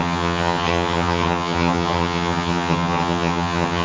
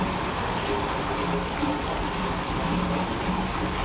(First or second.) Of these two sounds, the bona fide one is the second